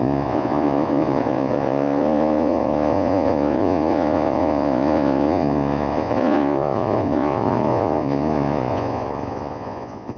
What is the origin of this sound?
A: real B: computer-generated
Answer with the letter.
B